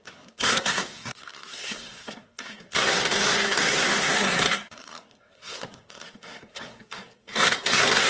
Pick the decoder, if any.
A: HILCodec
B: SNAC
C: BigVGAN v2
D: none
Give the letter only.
B